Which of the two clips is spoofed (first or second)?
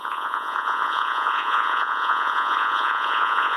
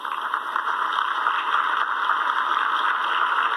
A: first